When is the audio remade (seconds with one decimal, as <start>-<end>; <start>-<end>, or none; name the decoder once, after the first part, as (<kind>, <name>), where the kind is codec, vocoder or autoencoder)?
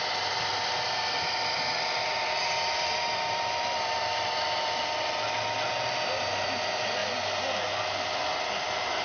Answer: none